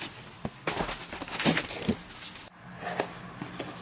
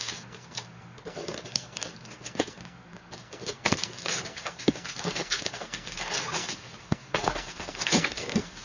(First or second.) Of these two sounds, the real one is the first